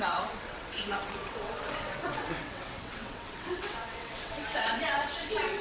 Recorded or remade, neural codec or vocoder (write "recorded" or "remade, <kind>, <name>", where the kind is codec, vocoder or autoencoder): remade, vocoder, WaveNeXt